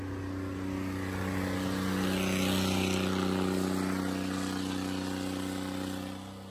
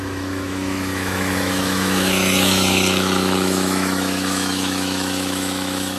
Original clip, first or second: first